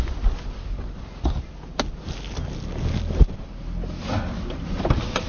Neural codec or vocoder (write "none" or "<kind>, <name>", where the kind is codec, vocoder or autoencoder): none